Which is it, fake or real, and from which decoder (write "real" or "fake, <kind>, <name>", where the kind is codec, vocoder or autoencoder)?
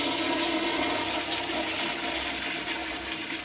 real